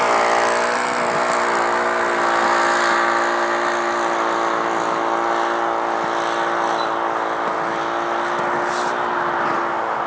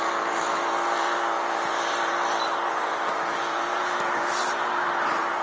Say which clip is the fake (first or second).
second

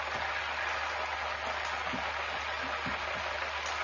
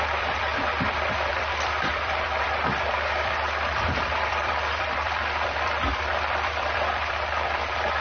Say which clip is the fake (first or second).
second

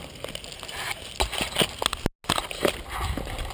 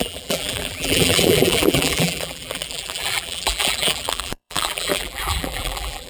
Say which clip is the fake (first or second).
second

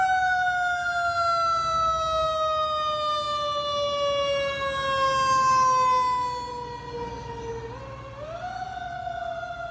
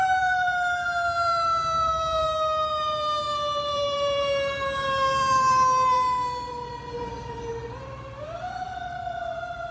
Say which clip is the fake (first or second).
second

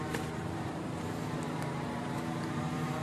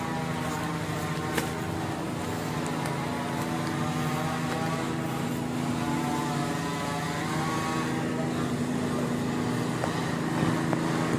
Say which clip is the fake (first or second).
first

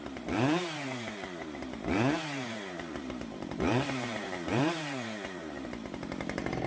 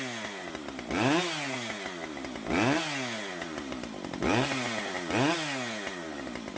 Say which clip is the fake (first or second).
first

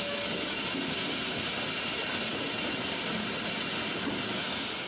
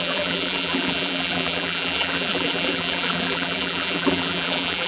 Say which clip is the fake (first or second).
second